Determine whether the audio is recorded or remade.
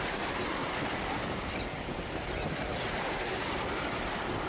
recorded